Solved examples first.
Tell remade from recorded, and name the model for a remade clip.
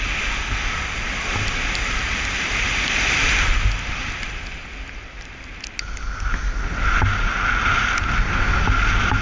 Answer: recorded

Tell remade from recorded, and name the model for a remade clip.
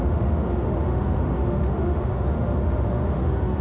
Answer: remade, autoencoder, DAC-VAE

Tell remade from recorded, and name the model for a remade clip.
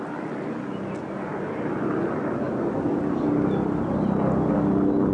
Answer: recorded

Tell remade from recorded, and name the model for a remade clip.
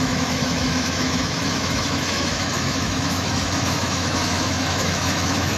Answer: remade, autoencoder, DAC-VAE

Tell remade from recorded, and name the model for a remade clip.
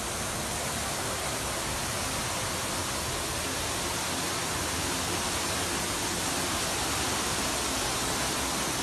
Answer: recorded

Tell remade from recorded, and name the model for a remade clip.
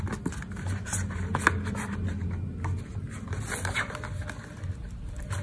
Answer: recorded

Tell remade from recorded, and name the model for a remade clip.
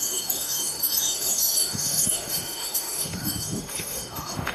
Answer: remade, autoencoder, DAC-VAE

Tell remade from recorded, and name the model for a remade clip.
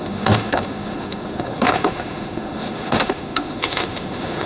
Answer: remade, autoencoder, DAC-VAE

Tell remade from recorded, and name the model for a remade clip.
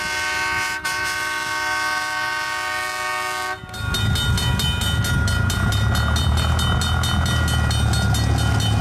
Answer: recorded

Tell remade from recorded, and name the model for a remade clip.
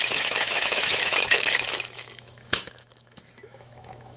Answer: remade, autoencoder, DAC-VAE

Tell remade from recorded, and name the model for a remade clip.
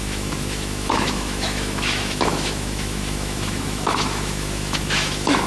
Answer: remade, autoencoder, DAC-VAE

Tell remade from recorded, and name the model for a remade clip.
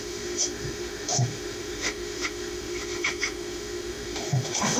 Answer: remade, autoencoder, DAC-VAE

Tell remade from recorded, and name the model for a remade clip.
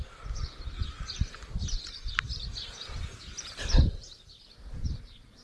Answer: recorded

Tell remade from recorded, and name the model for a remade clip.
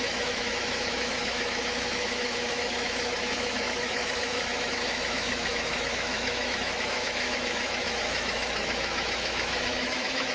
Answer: remade, autoencoder, DAC-VAE